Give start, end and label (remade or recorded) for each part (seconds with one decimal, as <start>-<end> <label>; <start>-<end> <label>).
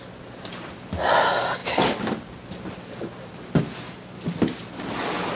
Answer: 0.0-5.4 recorded